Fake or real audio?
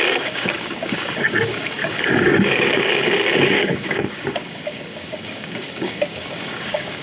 fake